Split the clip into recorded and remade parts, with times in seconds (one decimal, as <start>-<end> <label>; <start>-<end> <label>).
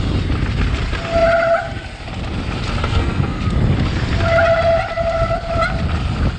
0.0-2.8 recorded; 2.8-3.4 remade; 3.4-6.4 recorded